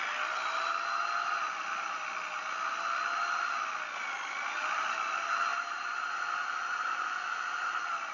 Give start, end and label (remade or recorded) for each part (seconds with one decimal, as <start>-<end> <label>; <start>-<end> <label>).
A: 0.0-5.5 recorded; 5.5-6.1 remade; 6.1-8.1 recorded